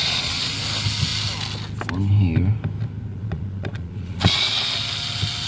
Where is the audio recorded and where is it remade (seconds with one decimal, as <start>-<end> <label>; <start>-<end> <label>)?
0.0-0.5 remade; 0.5-3.1 recorded; 3.1-4.5 remade; 4.5-5.5 recorded